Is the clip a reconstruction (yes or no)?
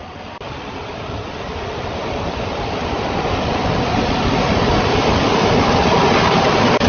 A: no